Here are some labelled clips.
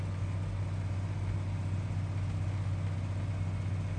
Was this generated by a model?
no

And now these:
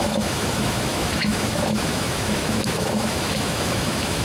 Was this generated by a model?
yes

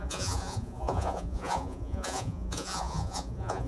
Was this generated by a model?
yes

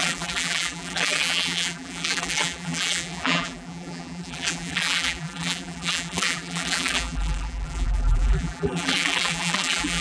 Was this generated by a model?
yes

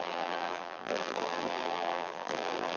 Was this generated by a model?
yes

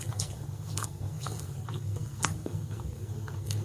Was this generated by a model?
yes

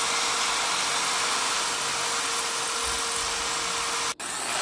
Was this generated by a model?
no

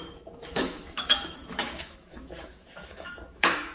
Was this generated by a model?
yes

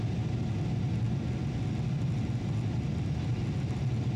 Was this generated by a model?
no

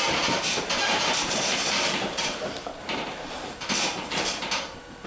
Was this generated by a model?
yes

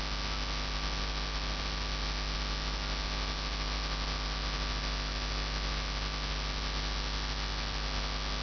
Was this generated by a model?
no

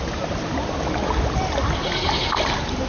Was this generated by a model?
no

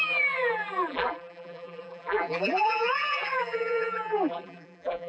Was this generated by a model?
yes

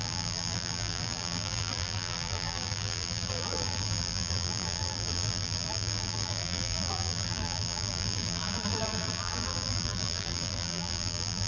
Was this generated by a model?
yes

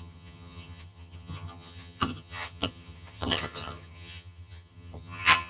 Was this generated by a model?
yes